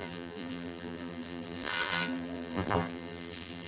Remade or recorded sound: remade